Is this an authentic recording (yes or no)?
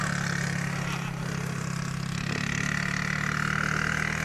yes